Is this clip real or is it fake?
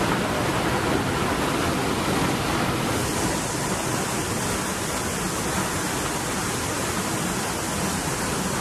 real